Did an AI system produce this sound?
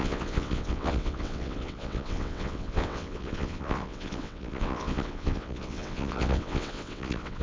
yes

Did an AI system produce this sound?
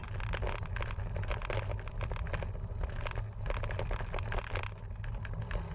no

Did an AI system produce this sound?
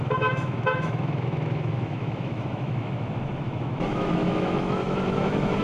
yes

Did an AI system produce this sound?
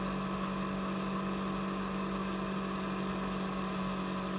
no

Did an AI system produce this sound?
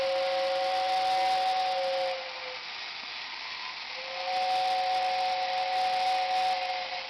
no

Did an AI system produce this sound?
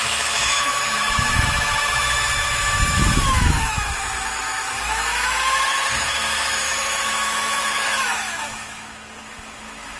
yes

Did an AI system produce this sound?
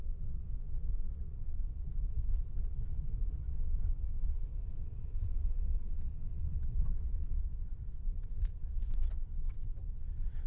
yes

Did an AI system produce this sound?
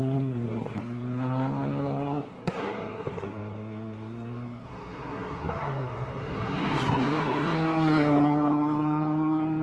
yes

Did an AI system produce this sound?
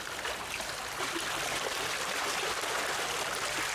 yes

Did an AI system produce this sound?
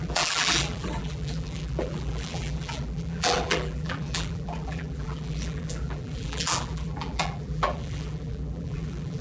yes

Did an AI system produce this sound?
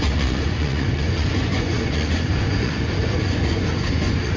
yes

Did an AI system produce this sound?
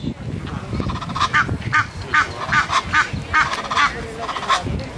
no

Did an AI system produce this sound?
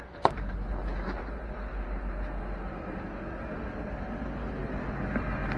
no